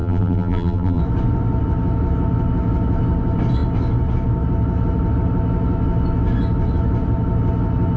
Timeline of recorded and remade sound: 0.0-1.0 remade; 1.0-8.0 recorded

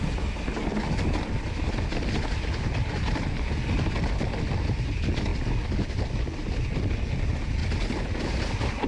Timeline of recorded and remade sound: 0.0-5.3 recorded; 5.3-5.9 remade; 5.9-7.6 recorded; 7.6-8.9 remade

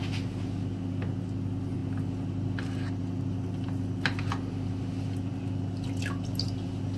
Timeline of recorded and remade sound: 0.0-7.0 recorded

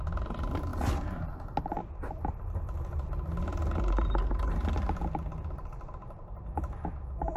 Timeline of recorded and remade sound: 0.0-7.4 recorded

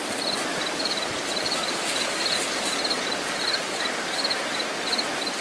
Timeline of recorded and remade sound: 0.0-0.5 recorded; 0.5-1.8 remade; 1.8-5.4 recorded

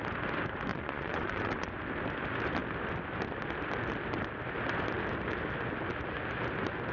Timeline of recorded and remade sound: 0.0-0.7 recorded; 0.7-1.8 remade; 1.8-6.9 recorded

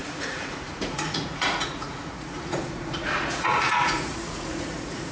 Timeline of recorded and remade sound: 0.0-5.1 remade